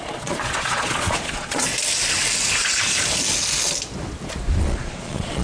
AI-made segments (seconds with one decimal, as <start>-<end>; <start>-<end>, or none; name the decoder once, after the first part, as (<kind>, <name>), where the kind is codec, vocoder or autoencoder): 0.0-1.7 (vocoder, Vocos); 4.6-5.4